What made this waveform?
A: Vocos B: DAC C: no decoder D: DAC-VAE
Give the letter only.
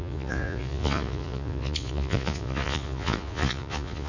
A